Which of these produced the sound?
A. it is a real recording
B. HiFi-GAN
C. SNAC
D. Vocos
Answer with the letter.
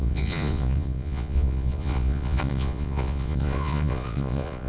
D